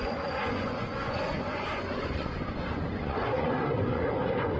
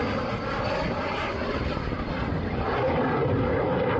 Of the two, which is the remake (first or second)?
first